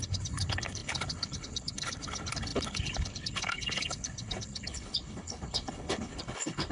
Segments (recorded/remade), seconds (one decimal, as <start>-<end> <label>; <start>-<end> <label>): 0.0-6.7 remade